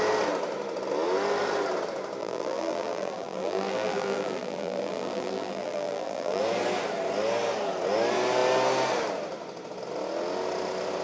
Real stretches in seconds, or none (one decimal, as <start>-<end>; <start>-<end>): 0.0-2.2; 6.4-11.0